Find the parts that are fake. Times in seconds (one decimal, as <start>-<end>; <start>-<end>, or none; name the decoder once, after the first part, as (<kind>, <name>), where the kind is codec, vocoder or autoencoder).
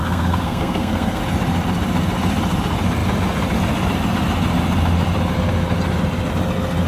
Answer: 0.0-1.2 (codec, SNAC)